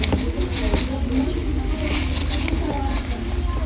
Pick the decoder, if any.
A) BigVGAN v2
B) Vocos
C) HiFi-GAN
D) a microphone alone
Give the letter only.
D